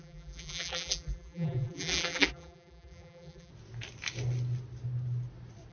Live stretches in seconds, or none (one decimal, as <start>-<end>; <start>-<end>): 3.5-5.7